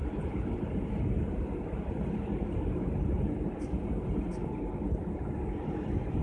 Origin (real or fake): real